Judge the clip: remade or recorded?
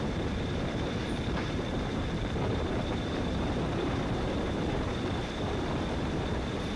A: remade